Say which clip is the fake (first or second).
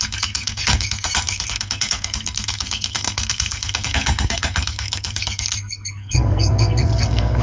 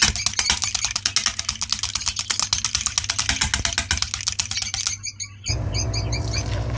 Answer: first